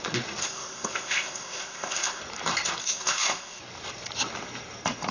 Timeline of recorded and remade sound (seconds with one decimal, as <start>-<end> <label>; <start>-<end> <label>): 0.0-0.4 recorded; 0.4-2.2 remade; 2.2-2.8 recorded; 2.8-3.6 remade; 3.6-5.1 recorded